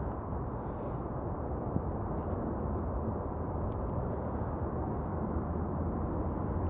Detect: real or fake real